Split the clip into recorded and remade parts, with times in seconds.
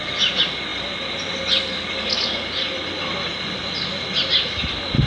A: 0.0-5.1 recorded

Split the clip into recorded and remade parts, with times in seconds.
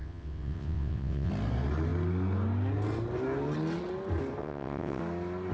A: 0.0-1.3 remade; 1.3-4.4 recorded; 4.4-5.0 remade; 5.0-5.5 recorded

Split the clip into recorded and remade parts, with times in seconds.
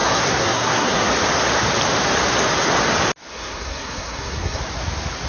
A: 0.0-1.1 remade; 1.1-3.3 recorded; 3.3-4.6 remade; 4.6-5.3 recorded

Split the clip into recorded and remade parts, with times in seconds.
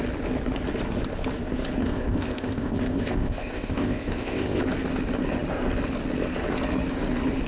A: 0.0-1.8 recorded; 1.8-4.6 remade; 4.6-7.5 recorded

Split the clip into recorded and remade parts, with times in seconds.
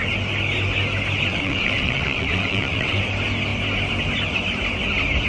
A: 0.0-1.3 recorded; 1.3-3.0 remade; 3.0-5.3 recorded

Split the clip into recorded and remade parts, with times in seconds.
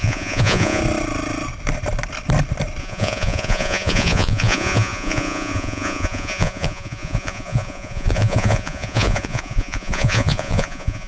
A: 0.0-0.8 remade; 0.8-2.8 recorded; 2.8-11.1 remade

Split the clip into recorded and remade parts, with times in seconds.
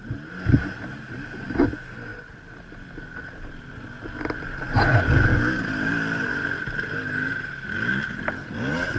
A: 0.0-5.3 recorded; 5.3-5.9 remade; 5.9-9.0 recorded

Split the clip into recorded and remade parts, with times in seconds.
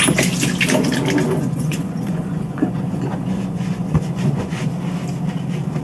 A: 0.0-1.2 recorded; 1.2-4.7 remade; 4.7-5.8 recorded